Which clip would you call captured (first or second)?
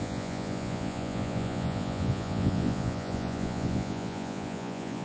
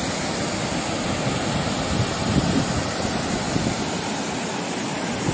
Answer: second